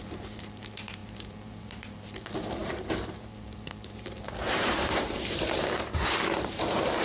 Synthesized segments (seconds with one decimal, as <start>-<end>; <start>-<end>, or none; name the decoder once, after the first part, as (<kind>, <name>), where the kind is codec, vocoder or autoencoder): 0.0-7.0 (vocoder, BigVGAN v2)